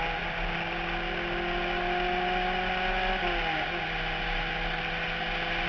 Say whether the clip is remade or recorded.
recorded